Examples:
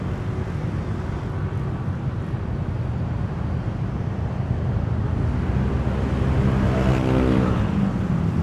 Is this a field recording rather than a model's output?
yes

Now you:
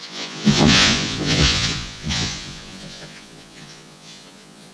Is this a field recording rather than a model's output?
no